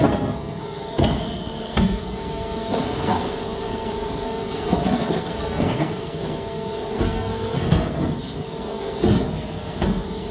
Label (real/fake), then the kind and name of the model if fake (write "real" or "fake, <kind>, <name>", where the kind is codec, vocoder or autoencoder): fake, codec, SNAC